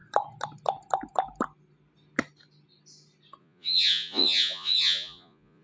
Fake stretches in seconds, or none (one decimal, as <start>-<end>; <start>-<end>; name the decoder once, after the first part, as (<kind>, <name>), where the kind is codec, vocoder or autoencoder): 3.4-5.6 (vocoder, Vocos)

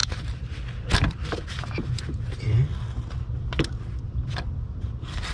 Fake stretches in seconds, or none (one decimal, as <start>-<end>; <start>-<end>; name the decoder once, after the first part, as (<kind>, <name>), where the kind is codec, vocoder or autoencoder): 0.0-2.7 (vocoder, BigVGAN v2); 3.4-5.3